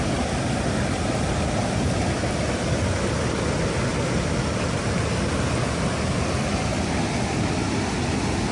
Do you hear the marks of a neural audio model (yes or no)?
no